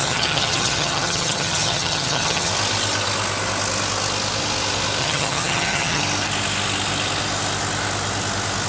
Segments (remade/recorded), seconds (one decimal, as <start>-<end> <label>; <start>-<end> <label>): 0.0-2.5 remade; 2.5-5.0 recorded; 5.0-6.0 remade; 6.0-8.7 recorded